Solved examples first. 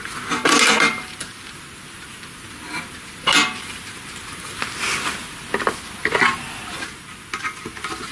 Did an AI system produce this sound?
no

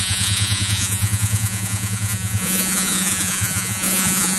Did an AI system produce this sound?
yes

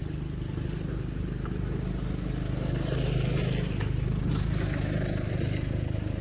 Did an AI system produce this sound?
no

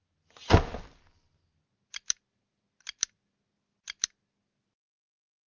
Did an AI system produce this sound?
no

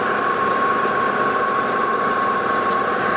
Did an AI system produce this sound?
yes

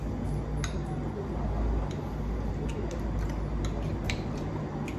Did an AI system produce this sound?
no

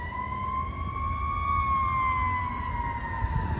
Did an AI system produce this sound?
no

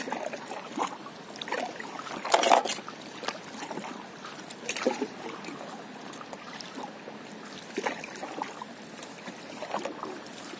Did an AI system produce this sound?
no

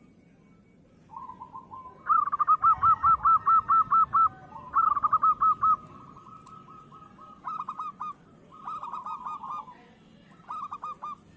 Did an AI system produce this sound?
no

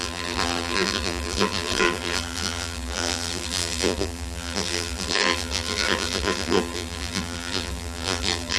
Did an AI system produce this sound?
yes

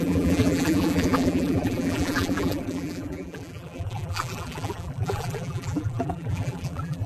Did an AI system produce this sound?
yes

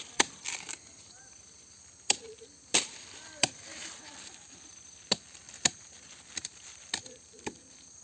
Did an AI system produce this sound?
no